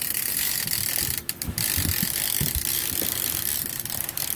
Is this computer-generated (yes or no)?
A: no